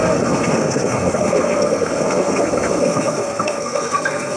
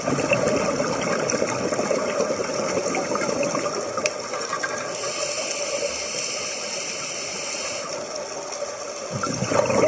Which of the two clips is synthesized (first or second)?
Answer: first